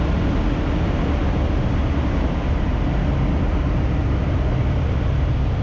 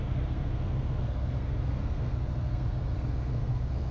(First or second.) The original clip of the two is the first